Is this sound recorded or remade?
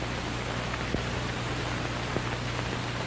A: recorded